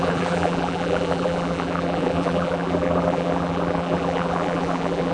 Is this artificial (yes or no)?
yes